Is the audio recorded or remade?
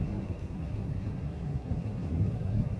remade